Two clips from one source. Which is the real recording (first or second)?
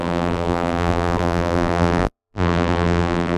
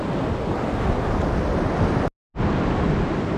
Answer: second